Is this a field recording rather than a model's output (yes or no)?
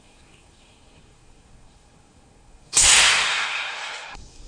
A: no